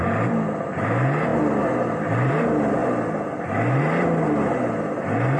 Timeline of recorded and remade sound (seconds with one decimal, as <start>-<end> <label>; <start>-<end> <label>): 0.0-5.4 recorded